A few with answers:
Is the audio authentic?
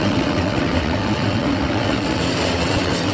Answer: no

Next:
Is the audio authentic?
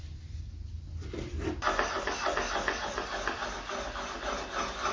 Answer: yes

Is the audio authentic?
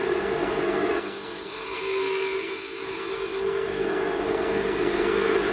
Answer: no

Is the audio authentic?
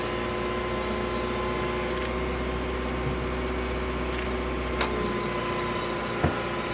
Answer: yes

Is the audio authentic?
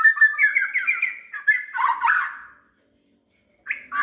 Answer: yes